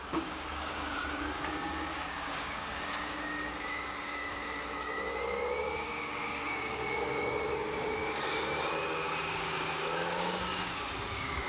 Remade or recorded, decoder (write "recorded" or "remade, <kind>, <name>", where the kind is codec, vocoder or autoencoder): remade, codec, DAC